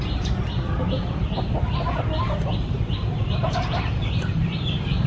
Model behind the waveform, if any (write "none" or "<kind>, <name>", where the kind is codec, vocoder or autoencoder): vocoder, BigVGAN v2